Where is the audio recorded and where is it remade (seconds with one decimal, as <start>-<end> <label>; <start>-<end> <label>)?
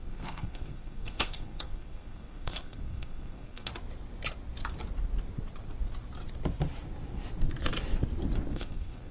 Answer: 0.0-3.7 remade; 3.7-8.5 recorded; 8.5-9.1 remade